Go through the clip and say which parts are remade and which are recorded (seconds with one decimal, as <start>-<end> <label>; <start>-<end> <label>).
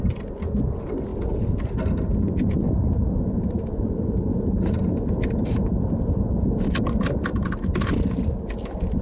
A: 0.0-4.3 recorded; 4.3-6.0 remade; 6.0-9.0 recorded